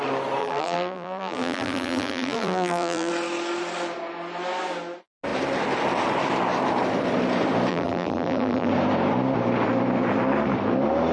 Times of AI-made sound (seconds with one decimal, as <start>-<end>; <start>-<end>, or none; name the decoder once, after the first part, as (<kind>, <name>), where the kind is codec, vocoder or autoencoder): 0.4-3.1 (vocoder, BigVGAN v2); 7.7-8.7